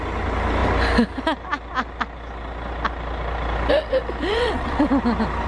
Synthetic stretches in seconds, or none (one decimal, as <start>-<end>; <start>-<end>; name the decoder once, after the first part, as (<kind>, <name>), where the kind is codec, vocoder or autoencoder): 4.3-4.9 (vocoder, WaveNeXt)